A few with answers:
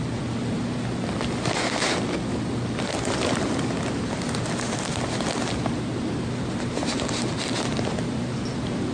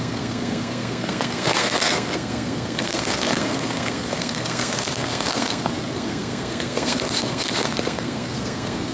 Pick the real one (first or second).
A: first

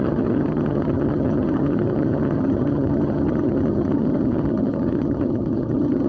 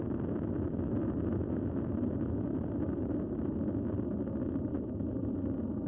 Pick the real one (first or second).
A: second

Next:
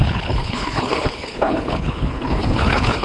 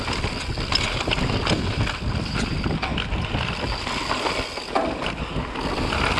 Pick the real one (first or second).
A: second